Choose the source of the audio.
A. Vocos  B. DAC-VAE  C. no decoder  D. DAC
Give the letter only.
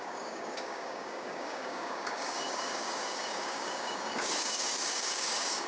D